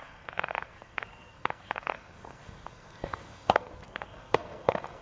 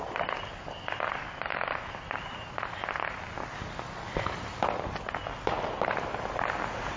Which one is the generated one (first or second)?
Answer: first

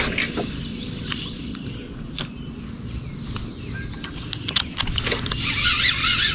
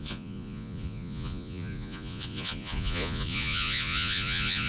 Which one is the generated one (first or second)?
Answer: second